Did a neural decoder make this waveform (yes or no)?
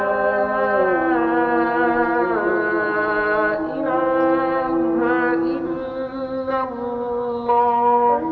no